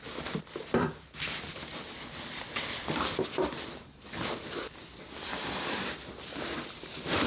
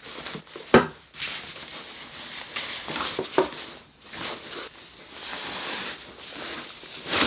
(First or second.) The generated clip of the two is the first